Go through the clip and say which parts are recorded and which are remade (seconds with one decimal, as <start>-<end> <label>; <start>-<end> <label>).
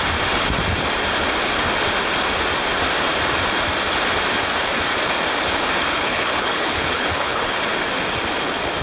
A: 0.0-5.9 recorded; 5.9-7.6 remade; 7.6-8.8 recorded